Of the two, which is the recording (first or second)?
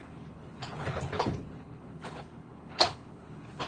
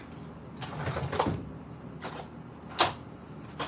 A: second